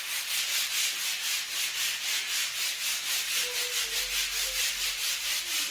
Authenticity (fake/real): real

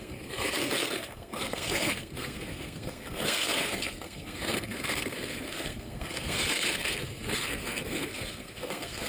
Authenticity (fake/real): fake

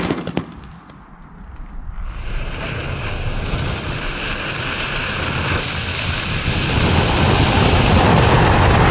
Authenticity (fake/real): real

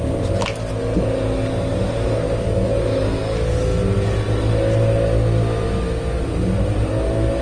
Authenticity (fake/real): real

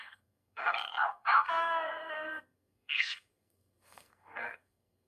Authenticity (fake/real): fake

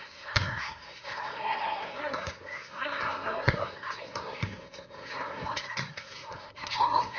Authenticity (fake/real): fake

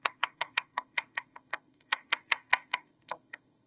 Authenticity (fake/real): fake